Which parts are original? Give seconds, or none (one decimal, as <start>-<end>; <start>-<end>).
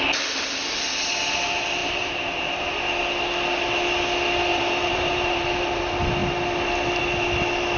0.0-1.8; 2.6-4.5; 5.8-7.8